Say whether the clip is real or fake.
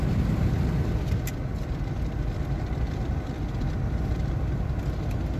real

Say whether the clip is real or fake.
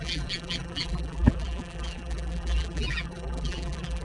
fake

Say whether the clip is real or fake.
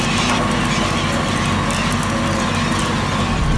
real